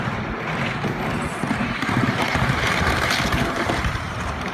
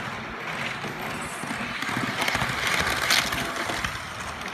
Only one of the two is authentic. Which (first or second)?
second